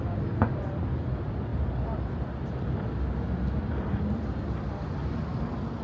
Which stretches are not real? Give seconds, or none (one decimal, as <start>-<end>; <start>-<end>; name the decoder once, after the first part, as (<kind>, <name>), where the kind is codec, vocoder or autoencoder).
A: none